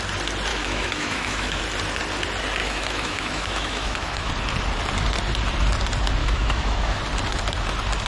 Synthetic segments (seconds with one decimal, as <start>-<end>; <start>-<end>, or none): 0.5-1.6; 2.6-4.3; 6.2-7.0